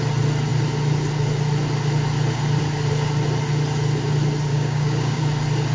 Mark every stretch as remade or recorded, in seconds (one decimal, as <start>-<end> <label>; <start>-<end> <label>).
0.0-4.5 recorded; 4.5-5.2 remade; 5.2-5.7 recorded